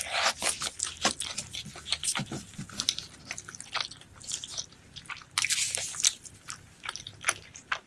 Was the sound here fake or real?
real